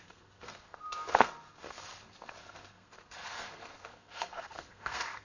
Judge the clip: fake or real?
fake